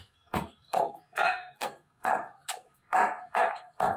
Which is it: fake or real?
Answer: fake